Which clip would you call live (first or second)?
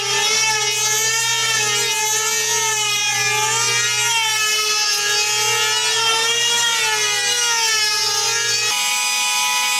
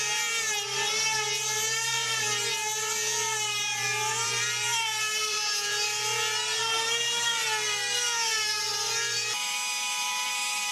first